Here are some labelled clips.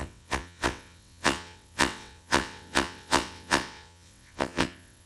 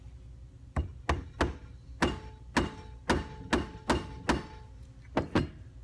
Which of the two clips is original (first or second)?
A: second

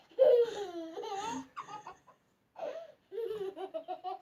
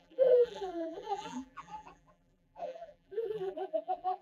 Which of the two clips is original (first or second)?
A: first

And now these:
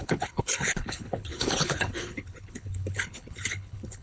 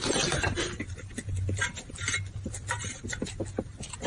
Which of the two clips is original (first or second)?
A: second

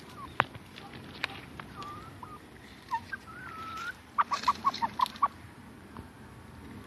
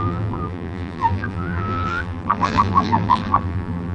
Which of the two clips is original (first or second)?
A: first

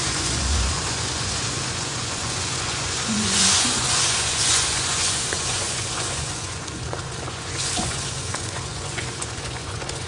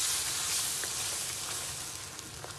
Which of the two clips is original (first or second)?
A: second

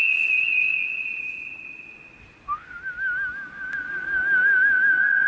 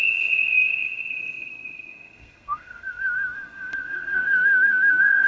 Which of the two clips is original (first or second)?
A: first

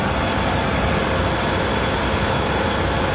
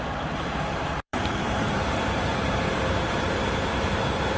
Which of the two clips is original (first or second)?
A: first